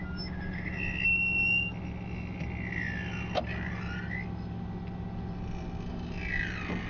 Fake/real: real